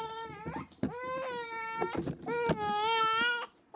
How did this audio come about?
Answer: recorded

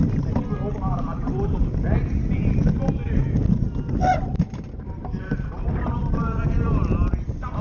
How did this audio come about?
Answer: recorded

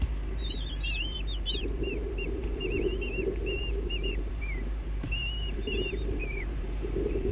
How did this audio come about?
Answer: remade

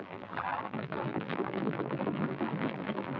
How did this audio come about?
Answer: remade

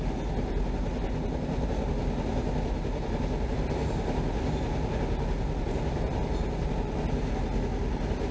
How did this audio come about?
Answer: recorded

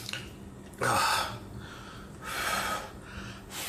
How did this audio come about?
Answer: recorded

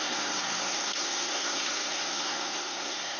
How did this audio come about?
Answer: remade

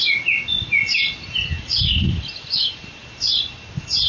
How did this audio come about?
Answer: recorded